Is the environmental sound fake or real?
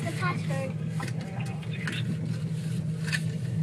real